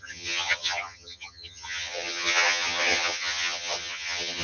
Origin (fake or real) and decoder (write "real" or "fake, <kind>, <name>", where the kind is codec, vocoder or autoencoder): fake, vocoder, HiFi-GAN